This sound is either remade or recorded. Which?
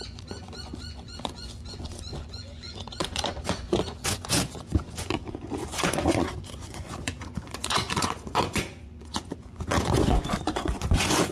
remade